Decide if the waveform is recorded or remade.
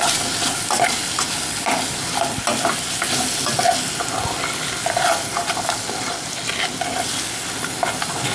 recorded